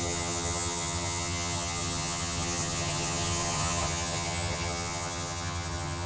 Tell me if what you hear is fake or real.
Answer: fake